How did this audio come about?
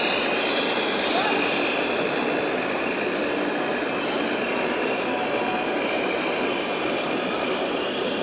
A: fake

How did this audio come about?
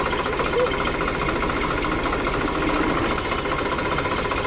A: real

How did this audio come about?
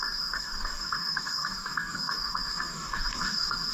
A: fake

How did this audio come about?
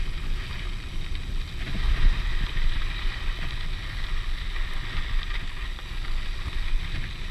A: real